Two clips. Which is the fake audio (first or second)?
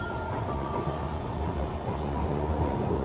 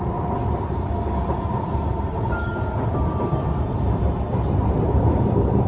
first